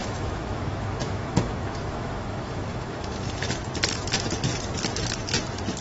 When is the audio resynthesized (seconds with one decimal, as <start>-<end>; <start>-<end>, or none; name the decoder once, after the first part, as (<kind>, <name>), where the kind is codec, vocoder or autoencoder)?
0.0-3.5 (autoencoder, DAC-VAE)